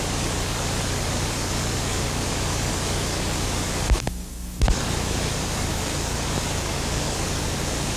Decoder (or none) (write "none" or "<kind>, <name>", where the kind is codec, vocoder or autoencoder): codec, DAC